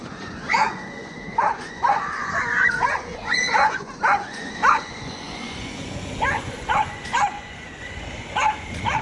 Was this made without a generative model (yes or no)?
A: no